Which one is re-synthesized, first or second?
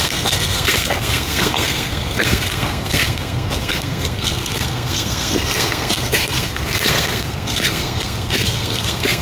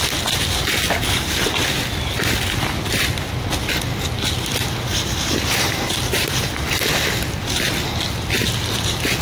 first